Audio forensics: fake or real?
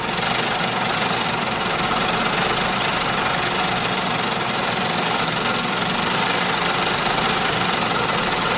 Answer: real